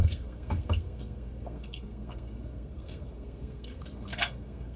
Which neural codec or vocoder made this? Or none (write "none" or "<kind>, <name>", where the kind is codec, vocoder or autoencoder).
codec, SNAC